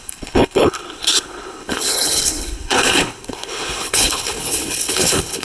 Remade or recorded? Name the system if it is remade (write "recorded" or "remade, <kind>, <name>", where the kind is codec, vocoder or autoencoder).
remade, codec, HILCodec